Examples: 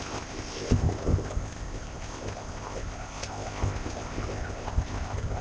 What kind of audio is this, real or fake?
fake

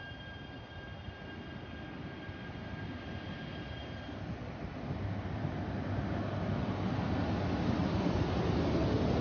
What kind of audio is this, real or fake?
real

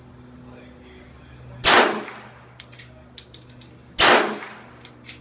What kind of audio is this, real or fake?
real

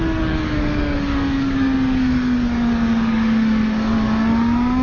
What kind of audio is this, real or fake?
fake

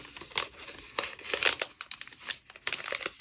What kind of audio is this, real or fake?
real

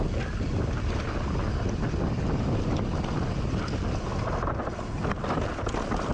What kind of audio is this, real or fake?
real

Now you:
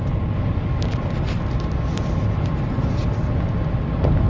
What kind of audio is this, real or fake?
real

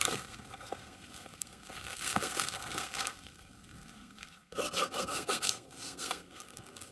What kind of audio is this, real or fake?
fake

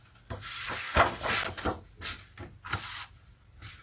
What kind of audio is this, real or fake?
real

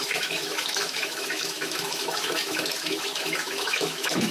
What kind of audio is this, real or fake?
fake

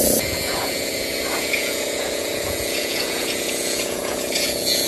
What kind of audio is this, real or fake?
fake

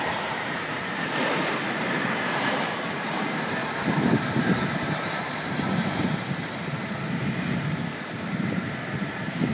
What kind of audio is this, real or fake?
fake